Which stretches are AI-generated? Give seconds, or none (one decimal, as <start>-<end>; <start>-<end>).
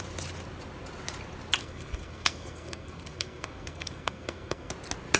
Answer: 1.6-4.7